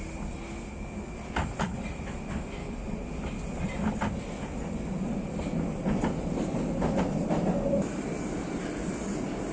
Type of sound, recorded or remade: recorded